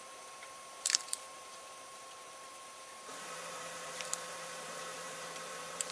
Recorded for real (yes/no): no